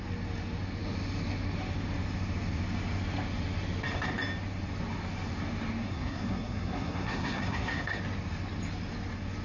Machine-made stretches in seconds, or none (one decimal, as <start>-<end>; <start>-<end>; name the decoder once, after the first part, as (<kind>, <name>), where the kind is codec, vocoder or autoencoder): 5.8-8.0 (codec, SNAC)